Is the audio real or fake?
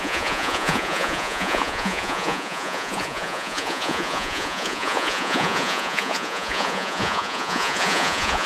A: fake